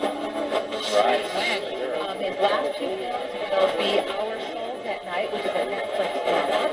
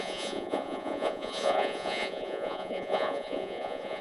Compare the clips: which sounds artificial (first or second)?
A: second